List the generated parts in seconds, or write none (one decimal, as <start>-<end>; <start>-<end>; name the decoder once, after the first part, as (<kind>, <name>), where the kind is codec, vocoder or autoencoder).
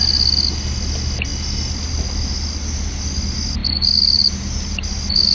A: none